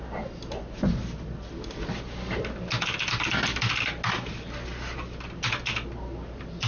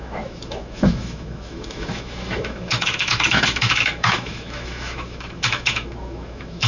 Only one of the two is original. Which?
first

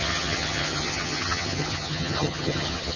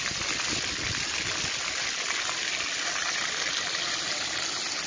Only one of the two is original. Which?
second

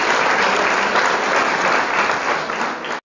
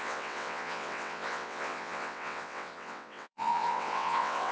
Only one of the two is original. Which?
first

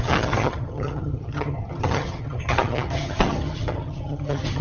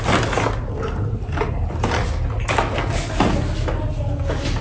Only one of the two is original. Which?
second